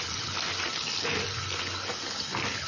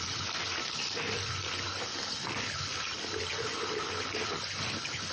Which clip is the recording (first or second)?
first